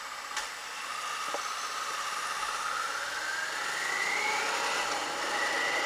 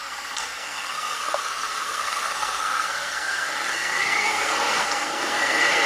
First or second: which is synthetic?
second